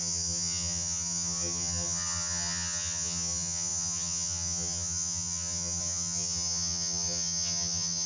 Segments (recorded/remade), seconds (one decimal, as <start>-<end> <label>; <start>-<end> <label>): 0.0-8.1 remade